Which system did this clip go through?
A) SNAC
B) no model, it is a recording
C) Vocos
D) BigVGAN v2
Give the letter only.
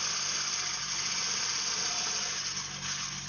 B